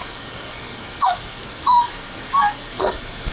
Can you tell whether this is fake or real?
fake